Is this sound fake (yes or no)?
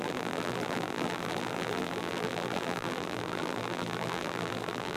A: yes